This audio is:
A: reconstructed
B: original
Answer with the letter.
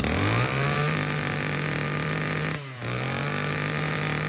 A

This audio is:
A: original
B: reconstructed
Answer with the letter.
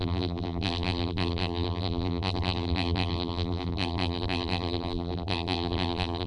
B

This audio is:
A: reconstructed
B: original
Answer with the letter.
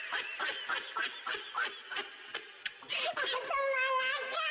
B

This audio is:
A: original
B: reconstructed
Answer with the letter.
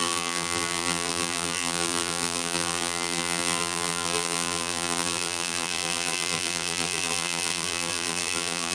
B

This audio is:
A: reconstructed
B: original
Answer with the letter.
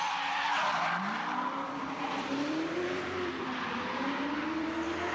A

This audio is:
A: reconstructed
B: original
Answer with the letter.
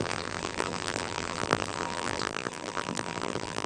A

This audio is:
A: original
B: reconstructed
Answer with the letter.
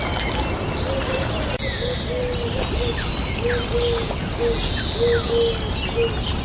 A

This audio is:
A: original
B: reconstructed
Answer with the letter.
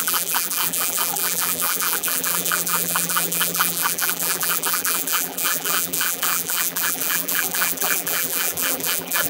B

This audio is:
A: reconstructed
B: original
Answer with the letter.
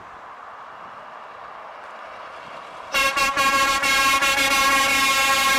B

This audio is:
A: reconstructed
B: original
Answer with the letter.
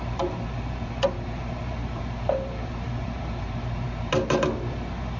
A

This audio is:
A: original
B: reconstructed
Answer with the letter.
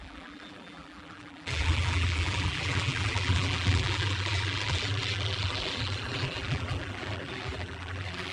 B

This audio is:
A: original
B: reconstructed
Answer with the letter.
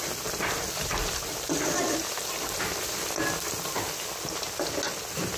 A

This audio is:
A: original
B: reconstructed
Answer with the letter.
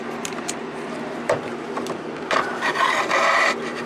B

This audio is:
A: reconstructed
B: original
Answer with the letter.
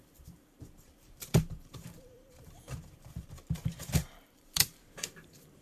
A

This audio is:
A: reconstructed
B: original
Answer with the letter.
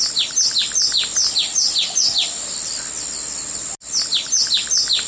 B